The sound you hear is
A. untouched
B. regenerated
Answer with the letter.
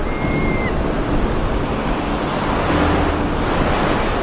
A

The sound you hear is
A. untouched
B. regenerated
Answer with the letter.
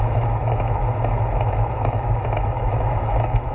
B